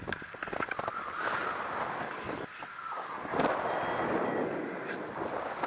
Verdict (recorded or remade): recorded